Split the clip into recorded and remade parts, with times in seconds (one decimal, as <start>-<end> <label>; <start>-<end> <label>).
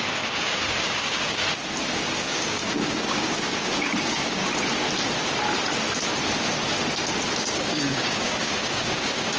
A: 0.0-1.4 remade; 1.4-2.2 recorded; 2.2-4.4 remade; 4.4-7.3 recorded; 7.3-9.4 remade